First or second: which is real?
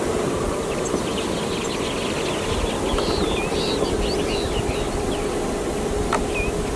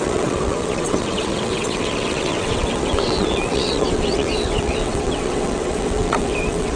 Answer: first